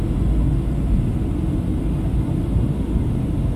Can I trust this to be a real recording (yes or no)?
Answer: yes